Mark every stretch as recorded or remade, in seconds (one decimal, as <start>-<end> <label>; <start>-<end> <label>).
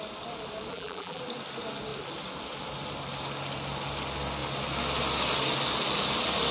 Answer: 0.0-0.7 recorded; 0.7-1.2 remade; 1.2-6.5 recorded